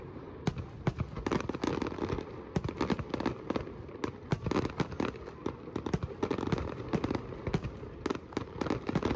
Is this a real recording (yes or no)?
yes